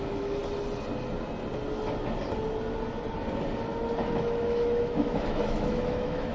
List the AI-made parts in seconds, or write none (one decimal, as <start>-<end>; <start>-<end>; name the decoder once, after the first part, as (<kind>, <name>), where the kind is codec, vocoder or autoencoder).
0.0-0.4 (autoencoder, DAC-VAE); 4.1-6.3